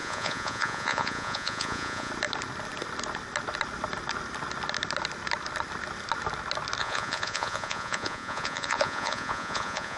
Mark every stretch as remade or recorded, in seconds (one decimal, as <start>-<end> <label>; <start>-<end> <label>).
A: 0.0-2.1 remade; 2.1-6.8 recorded; 6.8-10.0 remade